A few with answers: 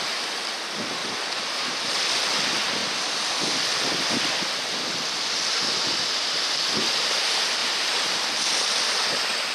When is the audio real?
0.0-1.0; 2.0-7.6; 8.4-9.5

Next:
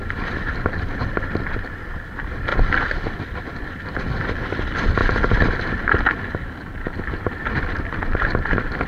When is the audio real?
0.0-8.9

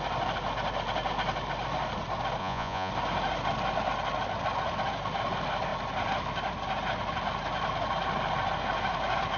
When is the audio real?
0.0-2.4; 2.9-9.4